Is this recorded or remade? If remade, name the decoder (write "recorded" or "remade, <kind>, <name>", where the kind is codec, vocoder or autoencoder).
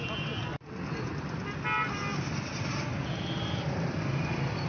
recorded